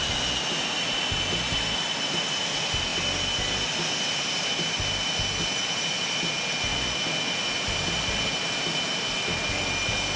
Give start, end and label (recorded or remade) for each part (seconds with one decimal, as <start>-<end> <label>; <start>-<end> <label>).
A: 0.0-10.2 recorded